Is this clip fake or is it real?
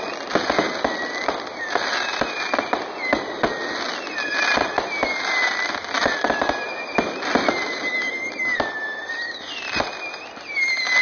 real